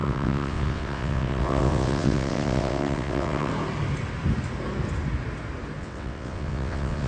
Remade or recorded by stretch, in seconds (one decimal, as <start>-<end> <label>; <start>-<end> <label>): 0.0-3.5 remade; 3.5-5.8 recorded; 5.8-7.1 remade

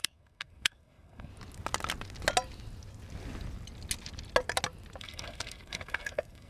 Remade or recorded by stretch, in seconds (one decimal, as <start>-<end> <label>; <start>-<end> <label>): 0.0-1.3 remade; 1.3-5.0 recorded; 5.0-6.5 remade

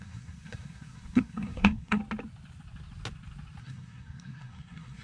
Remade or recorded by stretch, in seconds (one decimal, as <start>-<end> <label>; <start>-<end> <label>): 0.0-2.0 remade; 2.0-3.6 recorded; 3.6-5.0 remade